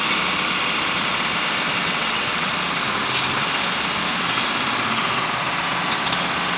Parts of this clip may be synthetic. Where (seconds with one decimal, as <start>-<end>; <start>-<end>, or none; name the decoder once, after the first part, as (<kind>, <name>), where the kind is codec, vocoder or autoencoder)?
1.8-2.5 (vocoder, WaveNeXt)